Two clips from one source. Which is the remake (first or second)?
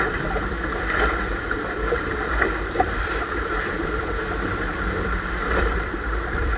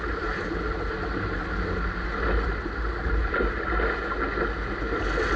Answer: first